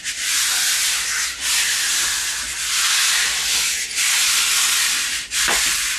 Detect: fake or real real